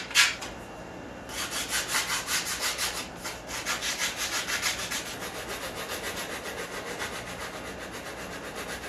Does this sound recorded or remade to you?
recorded